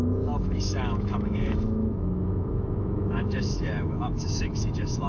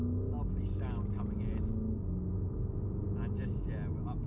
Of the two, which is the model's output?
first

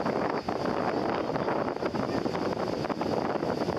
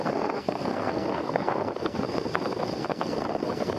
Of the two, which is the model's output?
second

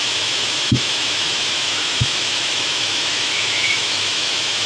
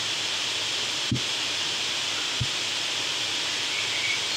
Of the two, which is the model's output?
first